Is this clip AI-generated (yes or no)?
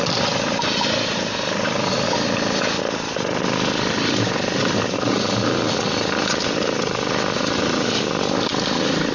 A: no